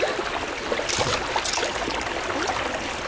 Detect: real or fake real